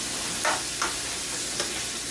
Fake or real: real